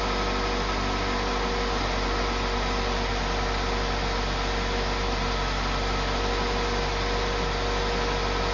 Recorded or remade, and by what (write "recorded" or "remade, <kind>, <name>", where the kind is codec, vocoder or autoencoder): recorded